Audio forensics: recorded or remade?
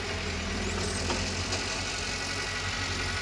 recorded